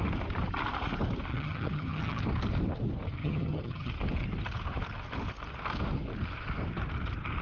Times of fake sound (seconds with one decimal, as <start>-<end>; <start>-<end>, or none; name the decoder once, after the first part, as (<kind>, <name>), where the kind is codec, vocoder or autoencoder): 1.3-2.2 (vocoder, HiFi-GAN); 3.2-3.9